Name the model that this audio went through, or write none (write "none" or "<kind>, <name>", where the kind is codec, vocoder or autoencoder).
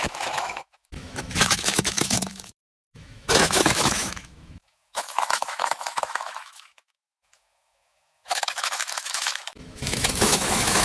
autoencoder, DAC-VAE